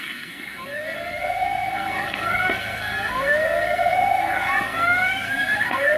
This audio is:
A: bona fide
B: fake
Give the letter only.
B